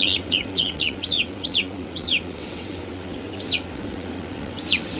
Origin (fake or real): fake